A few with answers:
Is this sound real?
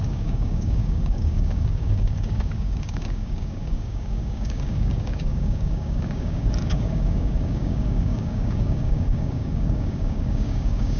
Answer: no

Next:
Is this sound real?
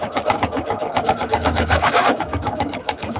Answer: no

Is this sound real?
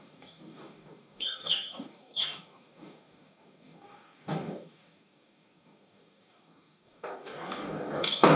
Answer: no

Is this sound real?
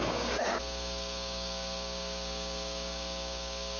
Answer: no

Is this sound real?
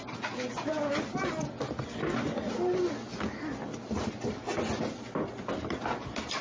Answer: yes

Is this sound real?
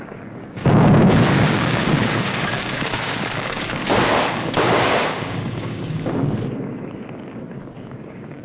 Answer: no